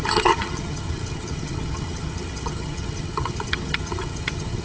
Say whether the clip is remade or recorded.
remade